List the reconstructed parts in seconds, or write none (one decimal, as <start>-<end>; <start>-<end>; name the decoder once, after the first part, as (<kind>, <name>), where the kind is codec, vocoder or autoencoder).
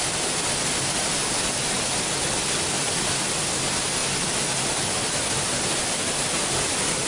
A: none